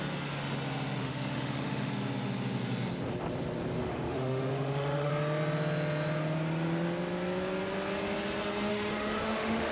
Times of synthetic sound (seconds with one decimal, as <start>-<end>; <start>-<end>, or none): 1.0-1.9; 3.8-5.1; 8.7-9.7